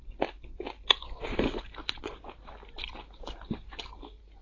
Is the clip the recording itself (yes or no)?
yes